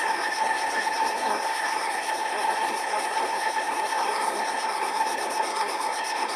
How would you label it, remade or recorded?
remade